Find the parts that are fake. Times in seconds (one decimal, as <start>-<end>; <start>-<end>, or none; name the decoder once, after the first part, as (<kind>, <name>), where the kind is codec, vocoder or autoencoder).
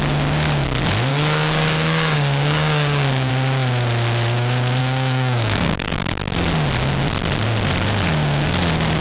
1.1-3.3 (codec, DAC); 4.8-6.0